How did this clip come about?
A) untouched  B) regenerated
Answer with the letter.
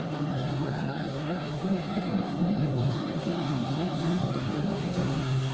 B